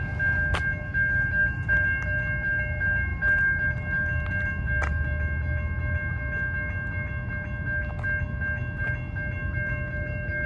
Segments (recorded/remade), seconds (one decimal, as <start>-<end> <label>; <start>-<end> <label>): 0.0-10.5 recorded